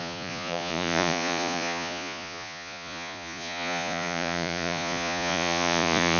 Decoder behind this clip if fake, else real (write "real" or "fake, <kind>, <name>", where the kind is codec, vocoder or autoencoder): fake, vocoder, Vocos